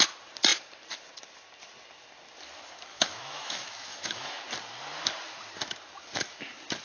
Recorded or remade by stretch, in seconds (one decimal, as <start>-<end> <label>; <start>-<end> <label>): 0.0-2.9 recorded; 2.9-4.4 remade; 4.4-6.8 recorded